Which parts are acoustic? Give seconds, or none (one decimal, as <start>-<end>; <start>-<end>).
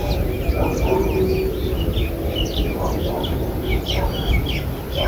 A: 0.0-5.1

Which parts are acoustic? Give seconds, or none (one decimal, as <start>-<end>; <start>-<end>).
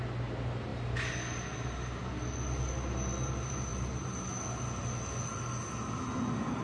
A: 0.0-3.7; 4.3-6.6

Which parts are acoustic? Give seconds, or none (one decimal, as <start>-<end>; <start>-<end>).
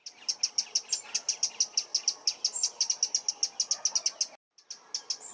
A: 0.0-5.3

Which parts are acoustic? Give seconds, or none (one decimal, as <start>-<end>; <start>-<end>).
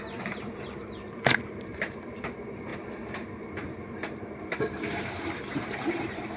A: none